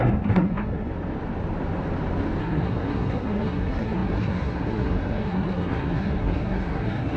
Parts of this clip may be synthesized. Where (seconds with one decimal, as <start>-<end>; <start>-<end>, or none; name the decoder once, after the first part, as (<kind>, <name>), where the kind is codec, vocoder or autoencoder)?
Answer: 0.0-0.9 (codec, SNAC); 2.4-7.2